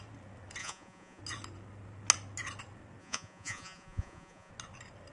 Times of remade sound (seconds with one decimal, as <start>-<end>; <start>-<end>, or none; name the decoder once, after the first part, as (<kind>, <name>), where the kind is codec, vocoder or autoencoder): 0.6-1.2 (vocoder, Vocos); 3.0-4.5